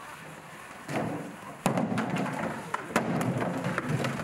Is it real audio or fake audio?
fake